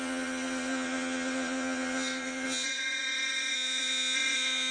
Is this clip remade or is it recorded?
remade